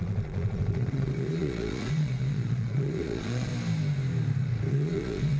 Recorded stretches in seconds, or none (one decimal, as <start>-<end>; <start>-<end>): 3.5-4.7